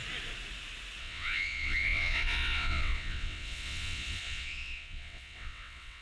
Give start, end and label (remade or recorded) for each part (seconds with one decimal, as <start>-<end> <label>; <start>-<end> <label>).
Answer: 0.0-1.0 recorded; 1.0-6.0 remade